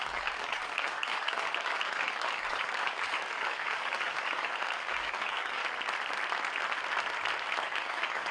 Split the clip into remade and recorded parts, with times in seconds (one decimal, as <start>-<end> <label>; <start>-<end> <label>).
0.0-5.6 remade; 5.6-7.6 recorded; 7.6-8.3 remade